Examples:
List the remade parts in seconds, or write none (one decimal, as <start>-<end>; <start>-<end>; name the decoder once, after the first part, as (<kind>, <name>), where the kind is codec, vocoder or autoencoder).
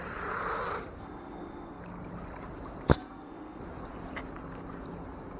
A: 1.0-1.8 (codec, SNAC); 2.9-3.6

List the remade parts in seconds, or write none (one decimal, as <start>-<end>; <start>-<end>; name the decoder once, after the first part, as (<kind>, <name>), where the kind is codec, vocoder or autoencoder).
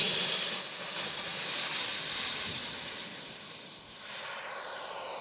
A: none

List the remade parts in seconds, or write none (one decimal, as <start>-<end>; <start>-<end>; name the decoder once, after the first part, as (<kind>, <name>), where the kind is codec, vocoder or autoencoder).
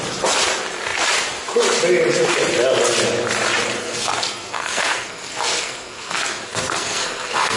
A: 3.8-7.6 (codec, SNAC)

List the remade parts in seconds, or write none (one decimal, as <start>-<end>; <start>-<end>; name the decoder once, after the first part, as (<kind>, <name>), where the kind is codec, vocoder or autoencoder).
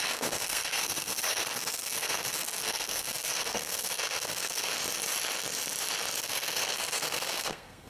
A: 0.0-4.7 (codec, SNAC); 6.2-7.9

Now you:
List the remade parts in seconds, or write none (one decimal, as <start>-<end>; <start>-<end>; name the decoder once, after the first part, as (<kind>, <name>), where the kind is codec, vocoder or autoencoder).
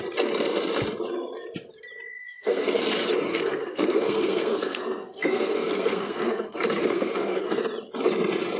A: 2.1-2.8 (codec, SNAC); 3.3-7.6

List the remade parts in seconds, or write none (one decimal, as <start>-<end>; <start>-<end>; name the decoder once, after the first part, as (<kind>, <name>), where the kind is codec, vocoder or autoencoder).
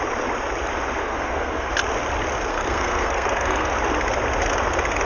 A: 1.0-1.7 (codec, SNAC); 2.5-3.7